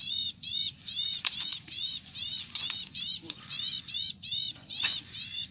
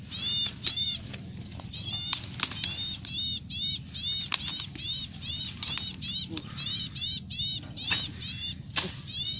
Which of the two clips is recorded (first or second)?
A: second